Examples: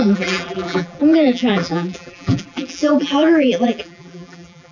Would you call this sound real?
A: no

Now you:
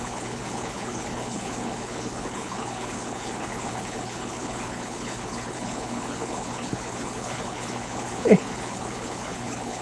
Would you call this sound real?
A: no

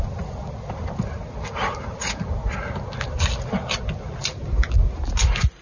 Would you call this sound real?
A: yes